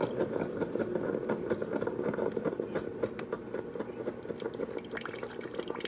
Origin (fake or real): real